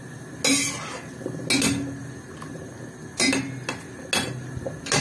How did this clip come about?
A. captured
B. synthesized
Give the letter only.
A